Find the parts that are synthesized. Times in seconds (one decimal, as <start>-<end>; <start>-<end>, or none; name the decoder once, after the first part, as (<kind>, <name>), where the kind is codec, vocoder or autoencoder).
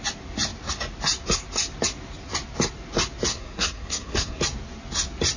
3.3-4.4 (codec, SNAC)